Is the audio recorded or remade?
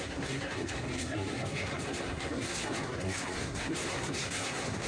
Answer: remade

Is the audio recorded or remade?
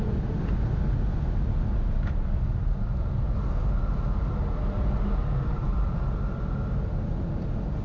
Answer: recorded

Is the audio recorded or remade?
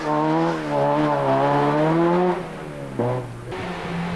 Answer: recorded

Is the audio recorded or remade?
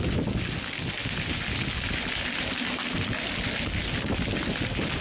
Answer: recorded